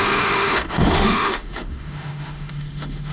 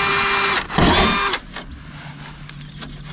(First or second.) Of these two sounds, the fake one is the first